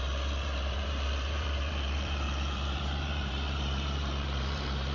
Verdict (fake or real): fake